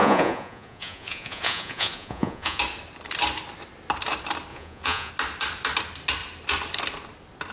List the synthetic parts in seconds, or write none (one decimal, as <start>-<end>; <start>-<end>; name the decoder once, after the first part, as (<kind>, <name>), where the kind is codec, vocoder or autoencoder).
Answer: 0.0-2.6 (vocoder, Vocos); 4.5-5.1

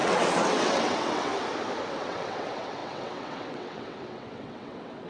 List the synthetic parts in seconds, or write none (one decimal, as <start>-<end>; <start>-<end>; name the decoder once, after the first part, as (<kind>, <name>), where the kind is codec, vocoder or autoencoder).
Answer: 0.0-1.3 (vocoder, WaveNeXt); 1.9-5.1

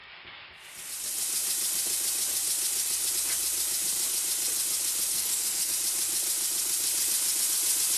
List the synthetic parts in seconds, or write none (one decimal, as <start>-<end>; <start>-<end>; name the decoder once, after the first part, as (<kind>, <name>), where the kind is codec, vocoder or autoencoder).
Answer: 5.1-5.7 (codec, SNAC)

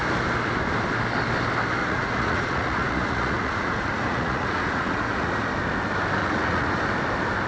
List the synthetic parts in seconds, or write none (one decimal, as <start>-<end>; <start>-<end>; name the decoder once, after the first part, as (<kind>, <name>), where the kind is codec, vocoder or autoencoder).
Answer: 1.8-5.5 (vocoder, Vocos); 6.2-6.8

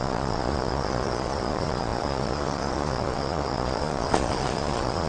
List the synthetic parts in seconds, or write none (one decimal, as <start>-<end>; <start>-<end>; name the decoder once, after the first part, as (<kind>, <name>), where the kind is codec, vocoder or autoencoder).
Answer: 0.0-5.1 (vocoder, Vocos)

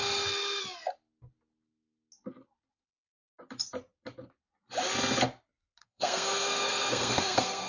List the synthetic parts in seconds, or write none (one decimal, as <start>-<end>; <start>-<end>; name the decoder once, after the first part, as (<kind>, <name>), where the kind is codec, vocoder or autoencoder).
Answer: 5.8-7.7 (codec, SNAC)